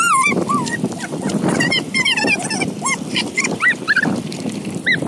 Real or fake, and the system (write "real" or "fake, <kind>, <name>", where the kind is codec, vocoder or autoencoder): fake, vocoder, BigVGAN v2